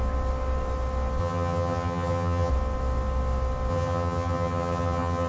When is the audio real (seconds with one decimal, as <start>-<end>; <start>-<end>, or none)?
0.0-1.2; 2.5-3.7